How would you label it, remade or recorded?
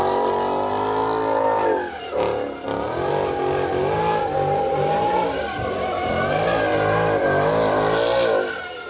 recorded